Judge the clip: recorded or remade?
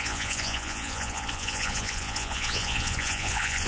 remade